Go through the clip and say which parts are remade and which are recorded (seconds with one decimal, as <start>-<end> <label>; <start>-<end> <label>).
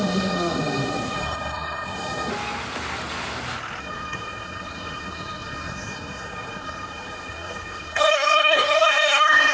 0.0-2.3 remade; 2.3-3.8 recorded; 3.8-9.5 remade